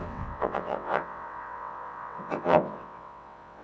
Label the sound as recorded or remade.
remade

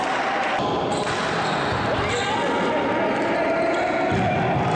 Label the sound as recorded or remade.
recorded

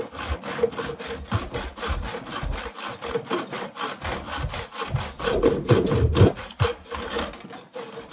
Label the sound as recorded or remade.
recorded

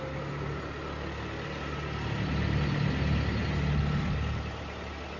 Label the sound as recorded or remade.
recorded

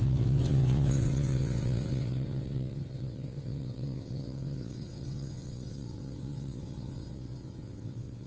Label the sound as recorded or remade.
remade